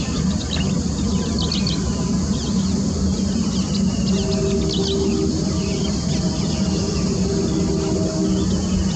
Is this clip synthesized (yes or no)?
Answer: no